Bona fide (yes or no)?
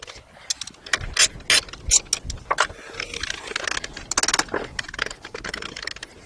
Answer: yes